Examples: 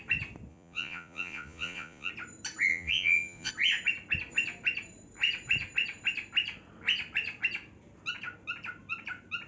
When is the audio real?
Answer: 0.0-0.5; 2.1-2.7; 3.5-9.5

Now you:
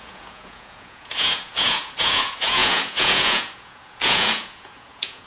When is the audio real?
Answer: none

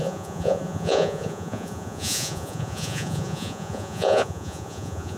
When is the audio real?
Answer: none

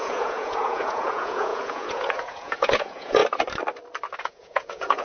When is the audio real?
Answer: 3.2-4.2

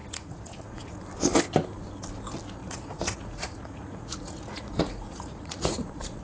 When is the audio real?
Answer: 1.0-2.6